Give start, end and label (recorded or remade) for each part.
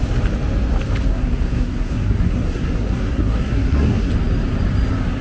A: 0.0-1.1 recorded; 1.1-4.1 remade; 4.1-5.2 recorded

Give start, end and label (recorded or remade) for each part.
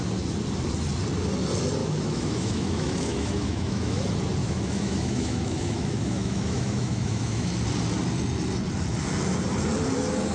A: 0.0-1.8 recorded; 1.8-4.0 remade; 4.0-4.4 recorded; 4.4-7.5 remade; 7.5-10.3 recorded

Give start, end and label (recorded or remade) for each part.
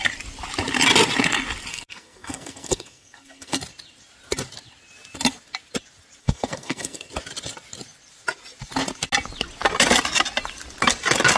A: 0.0-1.7 recorded; 1.7-3.6 remade; 3.6-6.2 recorded; 6.2-7.1 remade; 7.1-11.4 recorded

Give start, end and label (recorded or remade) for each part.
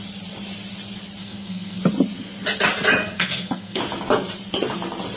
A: 0.0-1.2 recorded; 1.2-1.8 remade; 1.8-3.0 recorded; 3.0-3.8 remade; 3.8-5.2 recorded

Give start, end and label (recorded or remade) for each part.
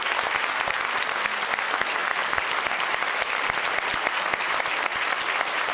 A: 0.0-5.7 recorded